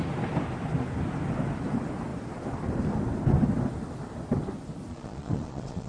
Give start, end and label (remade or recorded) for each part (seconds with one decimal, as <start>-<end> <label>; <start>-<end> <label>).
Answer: 0.0-4.9 recorded; 4.9-5.9 remade